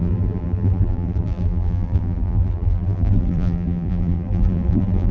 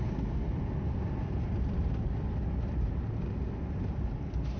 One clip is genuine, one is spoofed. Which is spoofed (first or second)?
first